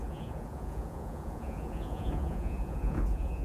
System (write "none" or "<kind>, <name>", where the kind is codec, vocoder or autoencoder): vocoder, Vocos